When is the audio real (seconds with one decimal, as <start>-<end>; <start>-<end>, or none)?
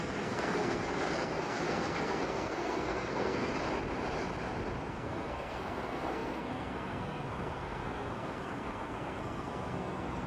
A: 3.5-4.9